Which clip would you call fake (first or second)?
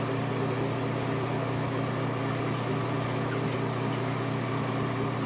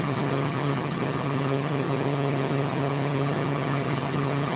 second